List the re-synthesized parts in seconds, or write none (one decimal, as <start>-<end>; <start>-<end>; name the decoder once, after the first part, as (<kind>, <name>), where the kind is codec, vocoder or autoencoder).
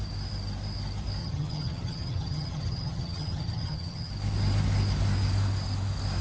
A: 1.2-4.1 (vocoder, HiFi-GAN)